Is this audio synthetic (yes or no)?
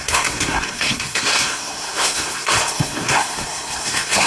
yes